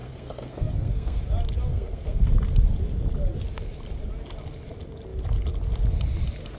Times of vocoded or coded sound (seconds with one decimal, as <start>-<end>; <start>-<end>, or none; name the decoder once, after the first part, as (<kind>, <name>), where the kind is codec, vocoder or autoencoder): 0.0-1.2 (codec, SNAC); 1.7-2.3